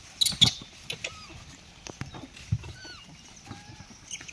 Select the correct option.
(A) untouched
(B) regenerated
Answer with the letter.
A